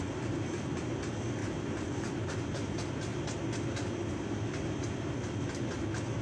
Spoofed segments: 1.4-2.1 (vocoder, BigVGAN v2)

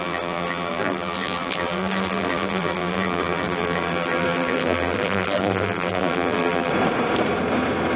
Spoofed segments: 0.0-6.7 (vocoder, BigVGAN v2)

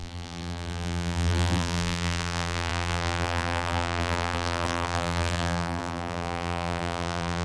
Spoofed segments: 0.0-7.4 (vocoder, BigVGAN v2)

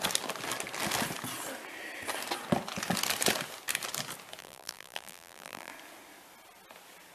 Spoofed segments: 4.4-5.7 (vocoder, BigVGAN v2)